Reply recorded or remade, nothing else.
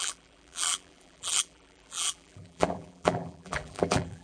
remade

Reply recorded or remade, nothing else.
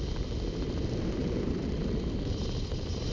recorded